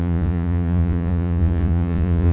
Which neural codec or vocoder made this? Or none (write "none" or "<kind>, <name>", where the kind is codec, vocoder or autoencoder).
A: vocoder, Vocos